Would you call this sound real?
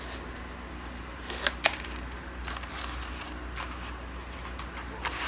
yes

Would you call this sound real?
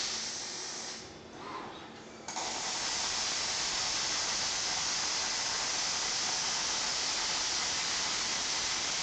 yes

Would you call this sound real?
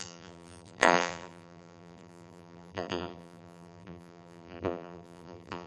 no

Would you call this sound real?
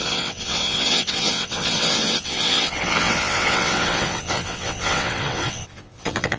no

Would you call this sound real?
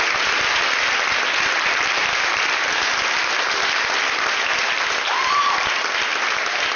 yes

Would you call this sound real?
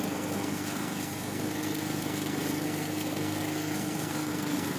no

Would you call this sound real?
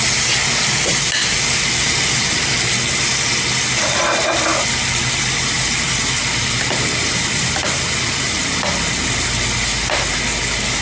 yes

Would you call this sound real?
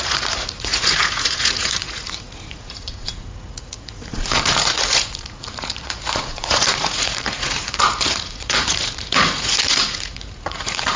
no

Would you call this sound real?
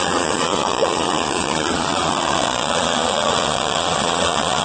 no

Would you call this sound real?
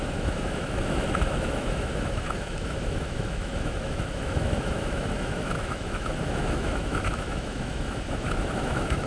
no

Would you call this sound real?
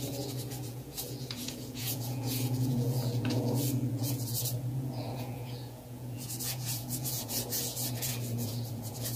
no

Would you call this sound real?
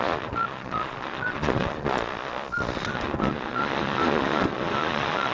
no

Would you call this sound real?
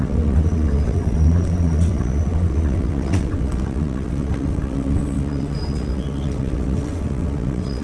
no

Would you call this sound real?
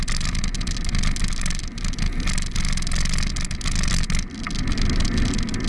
yes